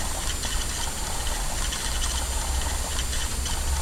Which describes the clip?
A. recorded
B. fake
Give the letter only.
A